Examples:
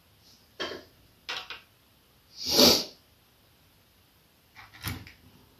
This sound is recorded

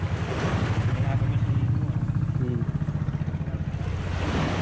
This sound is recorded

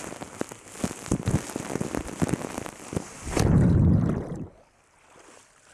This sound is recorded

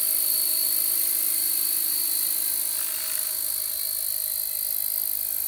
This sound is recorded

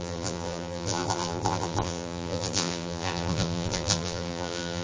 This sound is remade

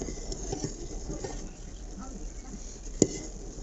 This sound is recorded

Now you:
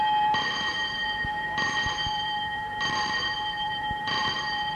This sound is remade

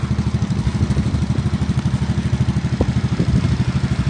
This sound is recorded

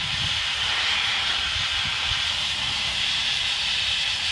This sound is remade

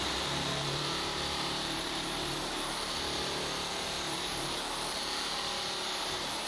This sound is remade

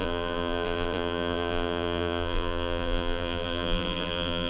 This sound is remade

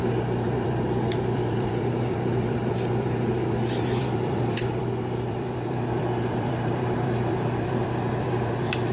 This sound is remade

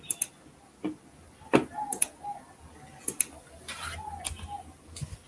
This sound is recorded